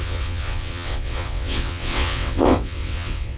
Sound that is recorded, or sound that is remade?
remade